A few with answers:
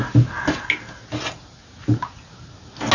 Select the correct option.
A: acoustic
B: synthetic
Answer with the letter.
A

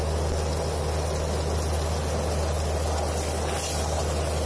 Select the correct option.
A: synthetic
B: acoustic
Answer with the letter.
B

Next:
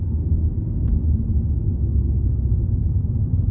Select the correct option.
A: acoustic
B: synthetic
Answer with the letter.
A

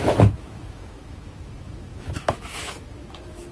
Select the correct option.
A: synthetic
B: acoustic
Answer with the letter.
A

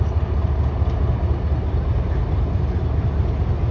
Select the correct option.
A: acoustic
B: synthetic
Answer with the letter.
A